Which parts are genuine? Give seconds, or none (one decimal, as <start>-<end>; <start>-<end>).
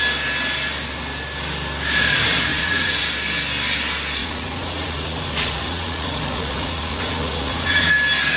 0.0-2.5; 3.0-4.2; 7.9-8.4